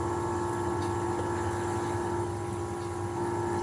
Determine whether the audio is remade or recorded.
recorded